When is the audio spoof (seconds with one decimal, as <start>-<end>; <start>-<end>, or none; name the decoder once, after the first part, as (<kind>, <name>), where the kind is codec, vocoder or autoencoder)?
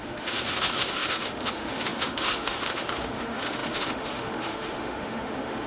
0.0-5.7 (autoencoder, DAC-VAE)